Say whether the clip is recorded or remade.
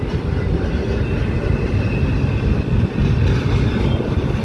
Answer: recorded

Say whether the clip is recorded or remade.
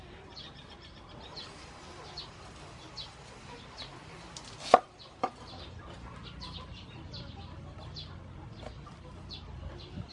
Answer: recorded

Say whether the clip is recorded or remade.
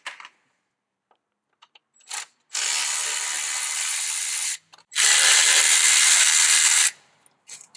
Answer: remade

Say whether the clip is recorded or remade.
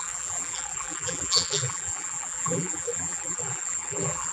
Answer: remade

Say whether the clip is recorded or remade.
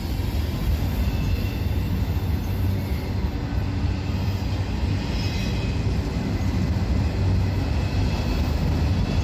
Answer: recorded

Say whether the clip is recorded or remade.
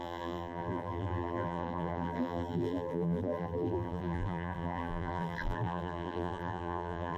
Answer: remade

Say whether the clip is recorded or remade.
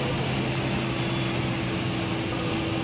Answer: recorded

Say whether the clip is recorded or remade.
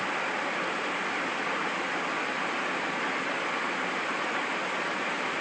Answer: recorded